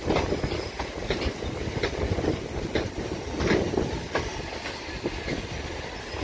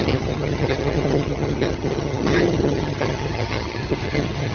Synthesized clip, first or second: second